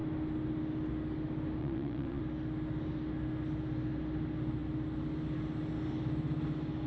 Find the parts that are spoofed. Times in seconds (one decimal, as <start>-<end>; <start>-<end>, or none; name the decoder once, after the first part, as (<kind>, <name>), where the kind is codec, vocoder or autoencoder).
1.6-2.2 (vocoder, Vocos)